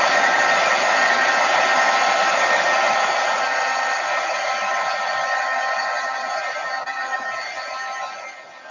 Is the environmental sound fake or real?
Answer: real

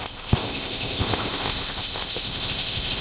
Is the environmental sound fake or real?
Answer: fake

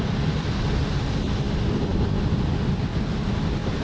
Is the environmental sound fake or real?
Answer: real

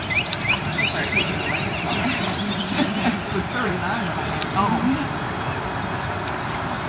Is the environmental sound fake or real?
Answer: real